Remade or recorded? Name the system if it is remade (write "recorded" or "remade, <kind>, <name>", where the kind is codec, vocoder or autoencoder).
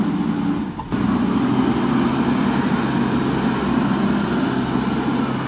recorded